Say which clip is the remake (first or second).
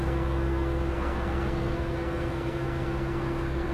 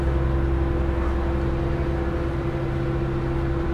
first